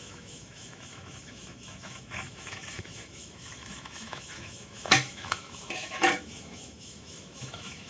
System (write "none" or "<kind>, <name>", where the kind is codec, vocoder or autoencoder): autoencoder, DAC-VAE